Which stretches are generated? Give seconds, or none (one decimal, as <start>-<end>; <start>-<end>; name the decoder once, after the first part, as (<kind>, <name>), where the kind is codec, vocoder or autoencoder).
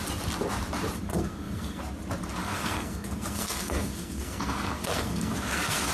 1.1-1.8 (codec, SNAC); 2.4-5.9